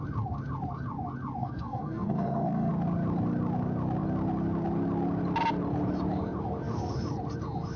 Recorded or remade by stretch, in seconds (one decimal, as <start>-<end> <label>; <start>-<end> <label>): 0.0-1.4 recorded; 1.4-2.7 remade; 2.7-7.8 recorded